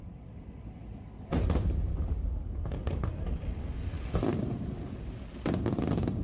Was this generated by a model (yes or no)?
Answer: no